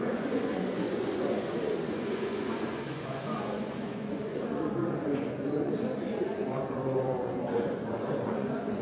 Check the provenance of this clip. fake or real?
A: fake